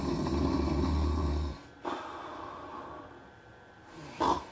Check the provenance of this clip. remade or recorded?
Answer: recorded